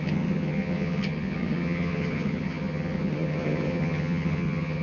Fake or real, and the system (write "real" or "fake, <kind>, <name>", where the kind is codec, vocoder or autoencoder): fake, vocoder, HiFi-GAN